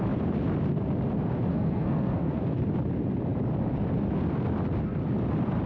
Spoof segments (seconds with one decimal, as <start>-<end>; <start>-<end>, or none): 1.5-2.4